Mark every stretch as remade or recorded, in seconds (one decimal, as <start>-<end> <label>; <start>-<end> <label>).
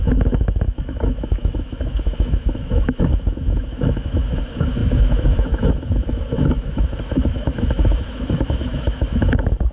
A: 0.0-9.7 remade